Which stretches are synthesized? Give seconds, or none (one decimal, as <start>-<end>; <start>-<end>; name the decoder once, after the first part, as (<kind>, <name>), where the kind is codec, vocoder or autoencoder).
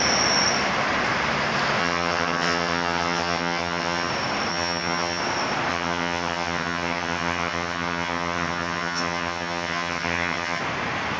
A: 1.8-4.1 (vocoder, HiFi-GAN); 4.5-5.2; 5.7-10.6